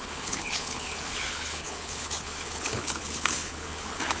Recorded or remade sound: remade